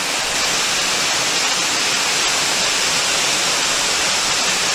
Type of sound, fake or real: real